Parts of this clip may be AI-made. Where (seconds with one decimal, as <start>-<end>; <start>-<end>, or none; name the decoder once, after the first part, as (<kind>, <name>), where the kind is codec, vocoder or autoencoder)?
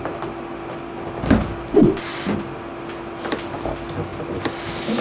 none